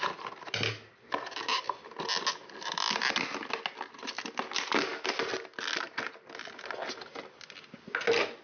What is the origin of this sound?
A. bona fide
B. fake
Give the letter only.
A